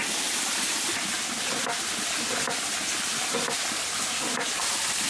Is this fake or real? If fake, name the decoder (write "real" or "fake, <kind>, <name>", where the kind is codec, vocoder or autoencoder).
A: real